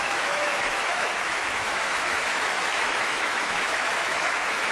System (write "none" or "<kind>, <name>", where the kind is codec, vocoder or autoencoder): autoencoder, DAC-VAE